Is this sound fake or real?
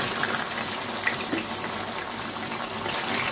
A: real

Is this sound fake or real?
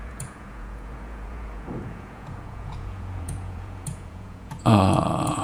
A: fake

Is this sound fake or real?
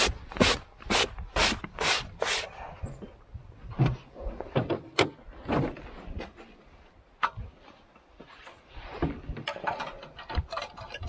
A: real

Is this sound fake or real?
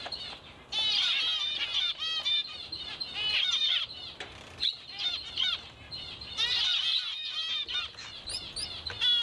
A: real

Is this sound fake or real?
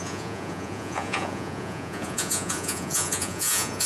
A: fake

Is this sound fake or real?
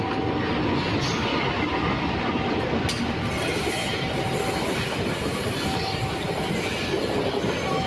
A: real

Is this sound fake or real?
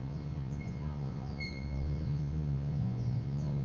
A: fake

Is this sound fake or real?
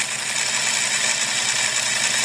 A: real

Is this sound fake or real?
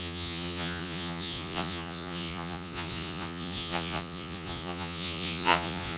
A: fake